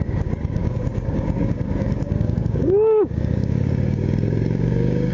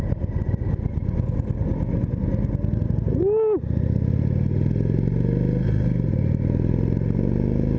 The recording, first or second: second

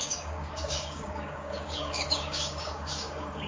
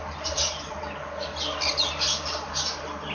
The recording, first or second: second